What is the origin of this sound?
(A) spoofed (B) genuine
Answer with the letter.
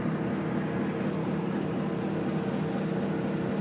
B